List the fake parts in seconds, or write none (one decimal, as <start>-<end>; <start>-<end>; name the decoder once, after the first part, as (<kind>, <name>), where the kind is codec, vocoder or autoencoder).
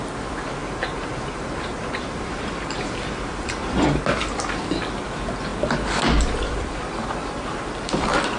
0.6-3.8 (vocoder, BigVGAN v2)